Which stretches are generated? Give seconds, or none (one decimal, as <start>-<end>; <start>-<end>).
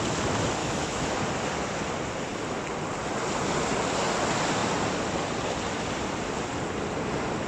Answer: 0.6-1.2